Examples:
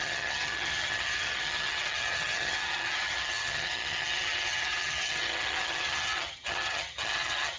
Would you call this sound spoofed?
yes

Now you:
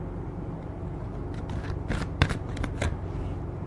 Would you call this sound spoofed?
no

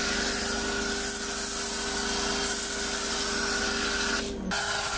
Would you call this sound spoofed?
no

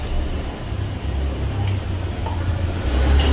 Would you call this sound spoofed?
no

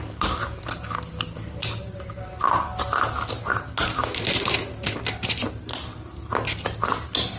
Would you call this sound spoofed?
no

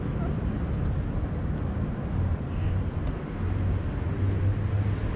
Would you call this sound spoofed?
no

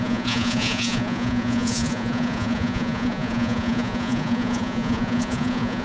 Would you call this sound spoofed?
yes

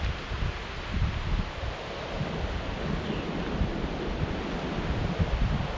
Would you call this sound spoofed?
no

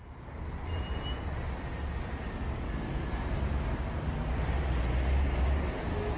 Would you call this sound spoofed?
no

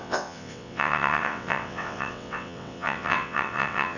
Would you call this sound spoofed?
yes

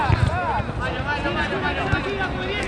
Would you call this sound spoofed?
no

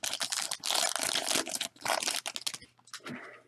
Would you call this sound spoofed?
no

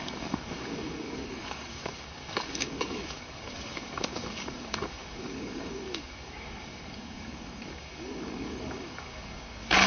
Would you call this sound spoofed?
yes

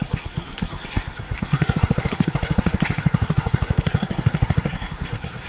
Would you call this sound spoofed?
yes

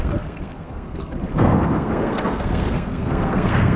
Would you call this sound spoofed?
yes